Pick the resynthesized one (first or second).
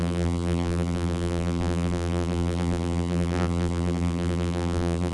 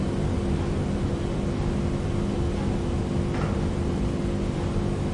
first